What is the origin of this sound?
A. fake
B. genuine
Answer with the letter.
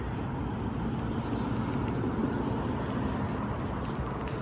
B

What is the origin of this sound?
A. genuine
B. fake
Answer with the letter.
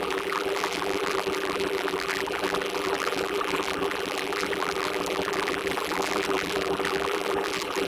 B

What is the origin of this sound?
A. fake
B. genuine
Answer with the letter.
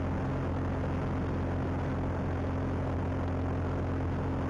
B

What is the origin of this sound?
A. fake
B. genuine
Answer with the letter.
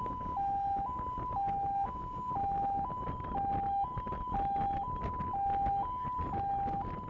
B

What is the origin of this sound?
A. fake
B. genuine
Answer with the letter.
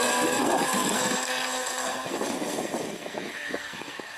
A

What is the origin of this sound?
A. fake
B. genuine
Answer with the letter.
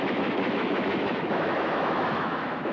A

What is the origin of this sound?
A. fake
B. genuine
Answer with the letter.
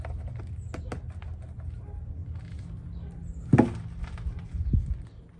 B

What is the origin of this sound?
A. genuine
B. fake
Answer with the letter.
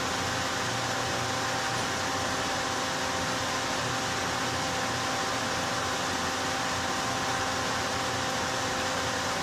A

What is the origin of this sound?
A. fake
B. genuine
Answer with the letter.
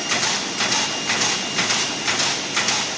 B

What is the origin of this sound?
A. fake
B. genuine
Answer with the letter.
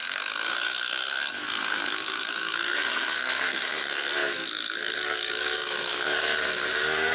A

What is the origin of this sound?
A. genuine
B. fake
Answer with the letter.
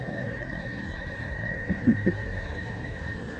B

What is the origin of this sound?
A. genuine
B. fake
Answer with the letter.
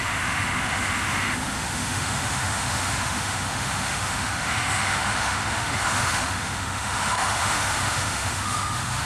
B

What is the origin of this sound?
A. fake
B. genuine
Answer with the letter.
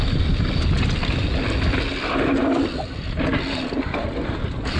B